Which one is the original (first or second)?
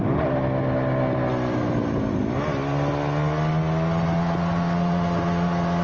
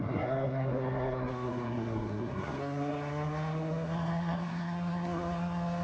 first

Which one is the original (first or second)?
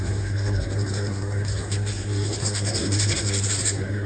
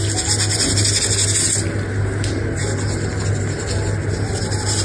second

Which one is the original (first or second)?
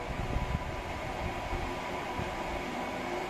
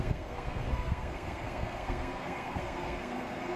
first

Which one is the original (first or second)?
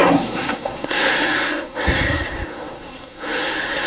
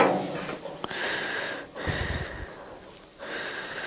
second